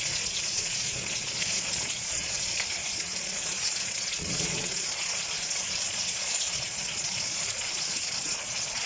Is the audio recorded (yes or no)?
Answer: no